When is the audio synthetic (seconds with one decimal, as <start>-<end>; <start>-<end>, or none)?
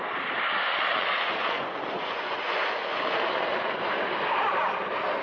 0.7-3.8